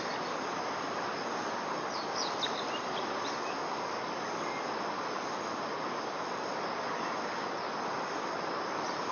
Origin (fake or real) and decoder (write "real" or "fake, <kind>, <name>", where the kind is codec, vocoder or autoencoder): real